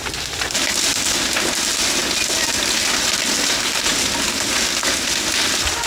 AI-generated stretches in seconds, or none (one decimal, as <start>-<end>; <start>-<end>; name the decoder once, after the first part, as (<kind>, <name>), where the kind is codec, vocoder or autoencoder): none